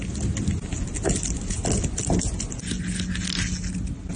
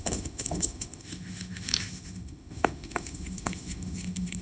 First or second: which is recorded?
first